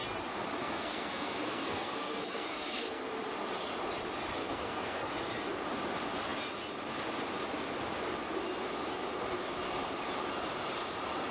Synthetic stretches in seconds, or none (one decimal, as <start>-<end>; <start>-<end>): 0.6-3.0; 4.4-5.1